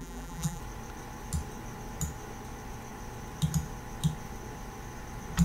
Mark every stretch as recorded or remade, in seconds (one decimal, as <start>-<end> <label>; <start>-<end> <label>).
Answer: 0.0-0.6 remade; 0.6-5.4 recorded